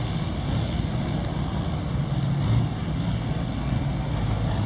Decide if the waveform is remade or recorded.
recorded